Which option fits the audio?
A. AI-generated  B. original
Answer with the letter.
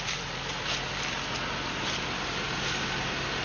B